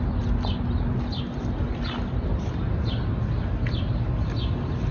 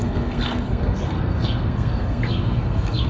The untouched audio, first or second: first